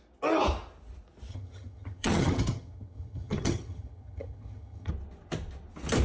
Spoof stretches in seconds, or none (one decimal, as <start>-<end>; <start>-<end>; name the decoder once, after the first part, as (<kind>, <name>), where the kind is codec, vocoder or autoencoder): 1.3-4.9 (vocoder, HiFi-GAN)